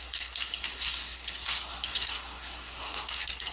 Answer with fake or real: fake